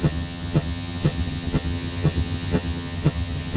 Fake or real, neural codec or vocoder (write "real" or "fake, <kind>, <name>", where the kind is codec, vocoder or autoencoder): fake, vocoder, HiFi-GAN